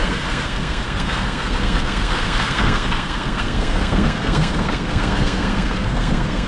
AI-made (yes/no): yes